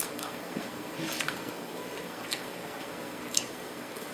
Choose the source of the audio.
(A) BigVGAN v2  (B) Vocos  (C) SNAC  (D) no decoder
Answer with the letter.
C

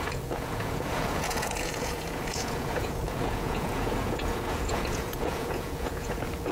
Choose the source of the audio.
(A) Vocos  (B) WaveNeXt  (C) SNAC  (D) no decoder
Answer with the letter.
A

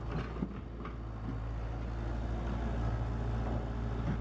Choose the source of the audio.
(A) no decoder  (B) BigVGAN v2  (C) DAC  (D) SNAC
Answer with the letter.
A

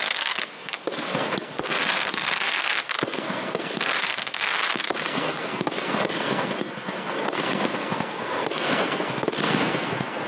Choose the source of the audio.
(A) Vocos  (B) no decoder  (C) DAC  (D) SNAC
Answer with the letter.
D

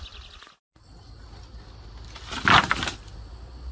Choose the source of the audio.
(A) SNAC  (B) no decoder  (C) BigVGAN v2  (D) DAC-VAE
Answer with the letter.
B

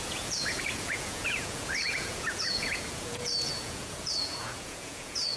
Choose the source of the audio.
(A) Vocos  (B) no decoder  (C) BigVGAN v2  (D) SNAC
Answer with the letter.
A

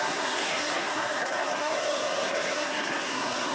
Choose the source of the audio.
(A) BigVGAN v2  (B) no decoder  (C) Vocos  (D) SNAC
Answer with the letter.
D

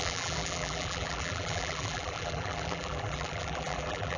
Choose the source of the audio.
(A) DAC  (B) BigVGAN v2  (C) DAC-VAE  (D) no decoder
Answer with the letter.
B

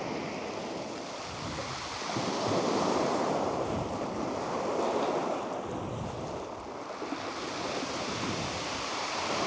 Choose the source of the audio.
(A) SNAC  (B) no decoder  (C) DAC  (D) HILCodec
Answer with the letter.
B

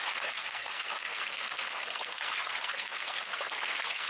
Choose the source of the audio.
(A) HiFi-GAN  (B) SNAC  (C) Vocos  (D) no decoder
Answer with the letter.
B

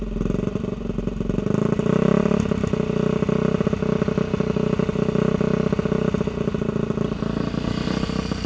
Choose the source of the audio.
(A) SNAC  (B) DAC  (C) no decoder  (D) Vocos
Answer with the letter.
C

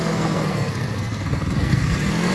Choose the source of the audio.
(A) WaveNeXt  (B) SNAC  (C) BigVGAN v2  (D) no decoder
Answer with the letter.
B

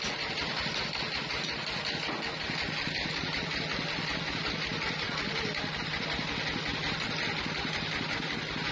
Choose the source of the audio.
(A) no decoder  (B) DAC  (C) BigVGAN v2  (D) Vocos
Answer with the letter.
A